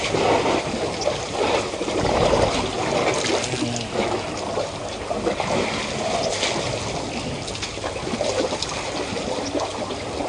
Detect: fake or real real